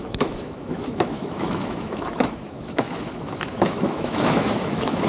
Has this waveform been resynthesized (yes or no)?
yes